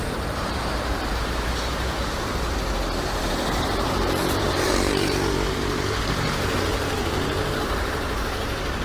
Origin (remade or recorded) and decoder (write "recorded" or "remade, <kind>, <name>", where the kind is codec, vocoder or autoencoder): remade, vocoder, BigVGAN v2